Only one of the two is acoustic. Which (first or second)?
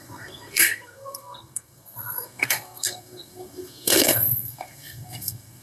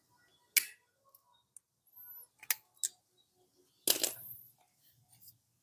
second